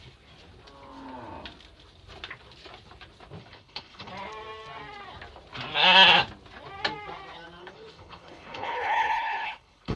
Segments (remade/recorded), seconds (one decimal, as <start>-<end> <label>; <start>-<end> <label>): 0.0-3.4 recorded; 3.4-4.1 remade; 4.1-7.6 recorded; 7.6-10.0 remade